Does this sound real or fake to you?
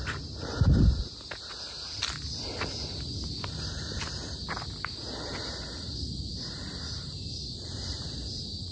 real